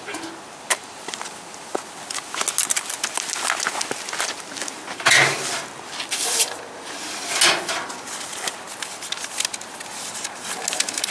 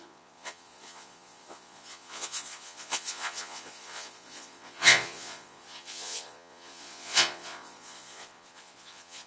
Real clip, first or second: first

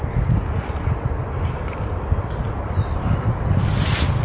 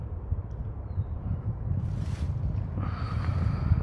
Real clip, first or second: first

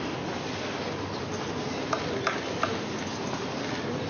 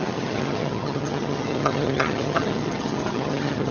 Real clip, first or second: first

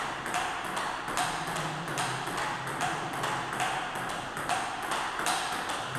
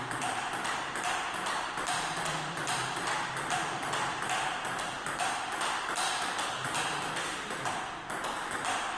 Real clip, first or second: first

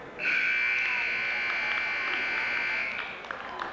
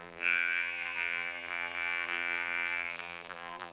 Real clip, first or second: first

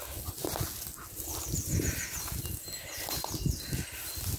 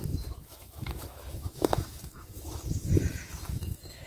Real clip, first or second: first